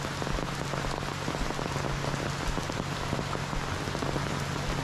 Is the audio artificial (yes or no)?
no